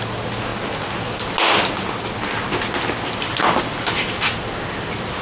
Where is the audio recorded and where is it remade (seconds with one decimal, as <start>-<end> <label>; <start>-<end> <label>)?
0.0-5.2 recorded